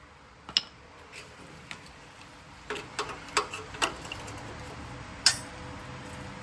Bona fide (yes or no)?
yes